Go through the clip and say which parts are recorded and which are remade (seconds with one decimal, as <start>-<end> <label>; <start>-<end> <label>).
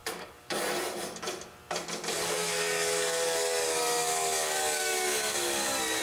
0.0-0.6 remade; 0.6-2.1 recorded; 2.1-6.0 remade